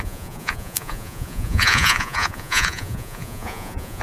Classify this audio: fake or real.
fake